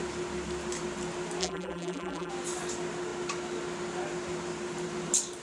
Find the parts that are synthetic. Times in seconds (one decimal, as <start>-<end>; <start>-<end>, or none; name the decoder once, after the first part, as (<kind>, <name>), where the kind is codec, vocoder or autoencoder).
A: 1.4-2.3 (vocoder, BigVGAN v2)